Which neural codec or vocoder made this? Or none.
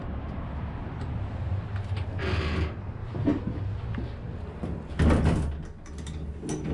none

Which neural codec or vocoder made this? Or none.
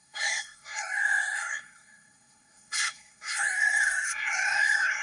codec, SNAC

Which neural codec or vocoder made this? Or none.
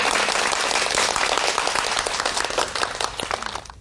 none